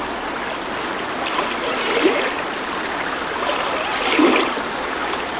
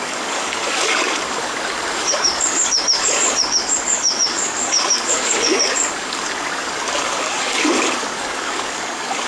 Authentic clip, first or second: first